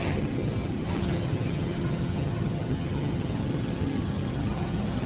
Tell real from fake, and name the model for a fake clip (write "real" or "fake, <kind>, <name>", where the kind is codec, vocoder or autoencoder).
fake, vocoder, HiFi-GAN